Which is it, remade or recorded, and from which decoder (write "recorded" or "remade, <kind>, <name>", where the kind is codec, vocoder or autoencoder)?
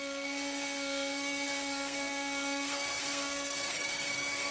remade, codec, SNAC